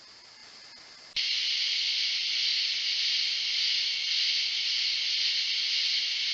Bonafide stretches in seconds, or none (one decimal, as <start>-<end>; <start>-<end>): 0.0-6.3